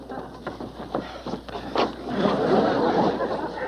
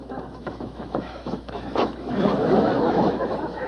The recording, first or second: first